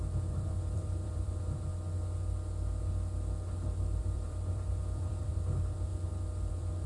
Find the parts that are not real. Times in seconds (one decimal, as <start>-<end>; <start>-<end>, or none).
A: 0.0-1.7; 4.0-6.9